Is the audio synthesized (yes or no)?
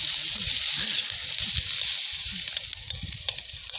no